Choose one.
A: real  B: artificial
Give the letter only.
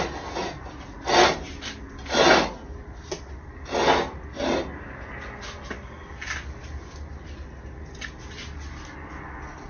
A